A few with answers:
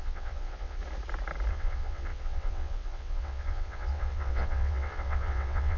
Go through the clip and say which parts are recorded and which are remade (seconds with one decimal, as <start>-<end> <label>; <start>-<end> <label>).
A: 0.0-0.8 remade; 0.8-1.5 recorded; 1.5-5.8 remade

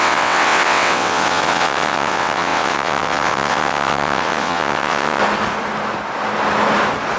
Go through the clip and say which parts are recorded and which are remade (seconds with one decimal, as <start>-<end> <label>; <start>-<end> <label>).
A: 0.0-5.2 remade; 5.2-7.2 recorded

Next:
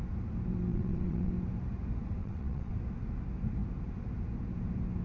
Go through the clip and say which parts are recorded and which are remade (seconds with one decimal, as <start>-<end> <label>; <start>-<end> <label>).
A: 0.0-0.7 recorded; 0.7-1.3 remade; 1.3-2.2 recorded; 2.2-2.7 remade; 2.7-5.0 recorded

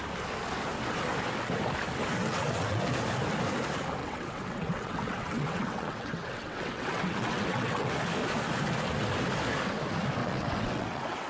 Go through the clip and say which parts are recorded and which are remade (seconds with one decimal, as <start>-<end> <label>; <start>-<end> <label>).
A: 0.0-2.2 recorded; 2.2-2.8 remade; 2.8-4.0 recorded; 4.0-7.9 remade; 7.9-10.2 recorded; 10.2-11.3 remade

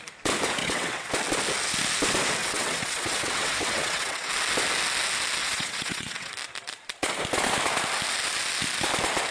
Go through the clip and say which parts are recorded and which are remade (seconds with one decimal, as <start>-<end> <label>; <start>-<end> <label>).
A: 0.0-0.6 recorded; 0.6-1.1 remade; 1.1-2.4 recorded; 2.4-4.3 remade; 4.3-5.4 recorded; 5.4-6.3 remade; 6.3-9.3 recorded